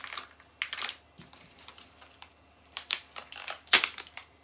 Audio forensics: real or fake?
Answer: real